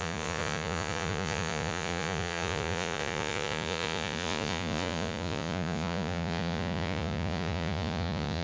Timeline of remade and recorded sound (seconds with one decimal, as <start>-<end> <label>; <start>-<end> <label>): 0.0-8.4 remade

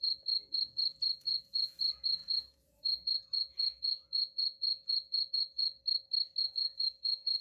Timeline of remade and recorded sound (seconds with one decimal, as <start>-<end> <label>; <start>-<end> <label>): 0.0-5.8 remade; 5.8-6.4 recorded; 6.4-7.4 remade